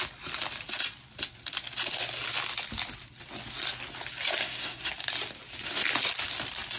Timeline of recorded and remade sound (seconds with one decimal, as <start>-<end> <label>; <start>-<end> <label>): 0.0-4.4 recorded; 4.4-4.9 remade; 4.9-6.8 recorded